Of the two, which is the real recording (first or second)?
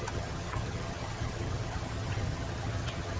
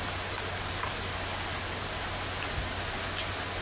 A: second